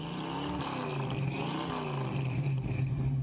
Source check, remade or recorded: recorded